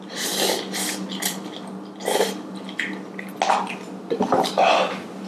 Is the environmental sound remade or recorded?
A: recorded